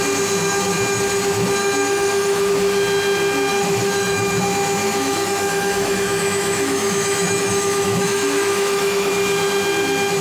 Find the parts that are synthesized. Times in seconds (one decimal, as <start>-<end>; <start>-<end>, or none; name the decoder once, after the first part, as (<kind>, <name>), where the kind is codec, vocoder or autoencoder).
1.6-2.5 (autoencoder, DAC-VAE); 3.5-4.3; 4.8-9.1